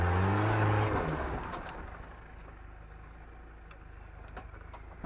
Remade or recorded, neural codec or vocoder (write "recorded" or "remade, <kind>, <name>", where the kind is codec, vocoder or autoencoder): recorded